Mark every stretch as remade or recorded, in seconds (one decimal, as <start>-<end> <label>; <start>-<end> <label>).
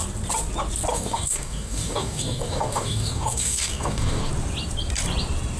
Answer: 0.0-0.9 recorded; 0.9-4.3 remade; 4.3-5.6 recorded